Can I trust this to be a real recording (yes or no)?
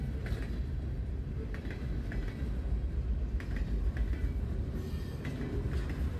yes